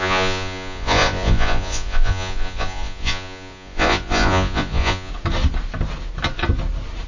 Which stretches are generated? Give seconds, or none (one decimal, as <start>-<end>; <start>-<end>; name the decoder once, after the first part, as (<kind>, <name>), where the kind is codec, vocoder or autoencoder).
0.0-5.1 (vocoder, Vocos)